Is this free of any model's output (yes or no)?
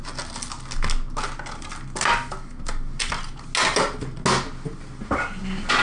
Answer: yes